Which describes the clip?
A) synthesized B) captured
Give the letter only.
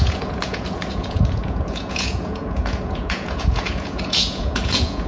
A